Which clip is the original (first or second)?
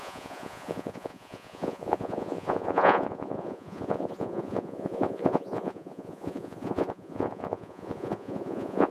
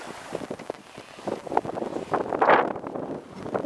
second